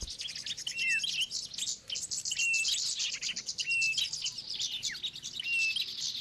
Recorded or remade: recorded